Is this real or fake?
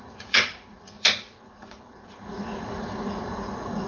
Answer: fake